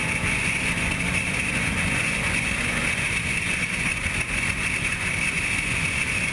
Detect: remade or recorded remade